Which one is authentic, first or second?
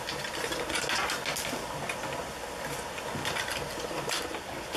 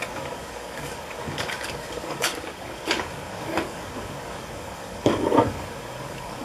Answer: first